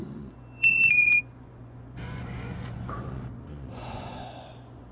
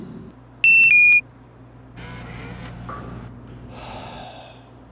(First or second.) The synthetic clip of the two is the first